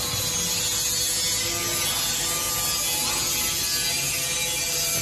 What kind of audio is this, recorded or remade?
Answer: recorded